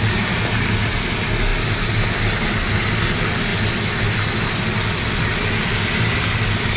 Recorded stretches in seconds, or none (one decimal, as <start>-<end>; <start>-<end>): 0.0-6.8